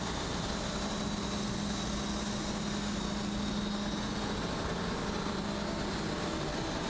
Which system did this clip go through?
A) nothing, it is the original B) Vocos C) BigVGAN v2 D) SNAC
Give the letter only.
A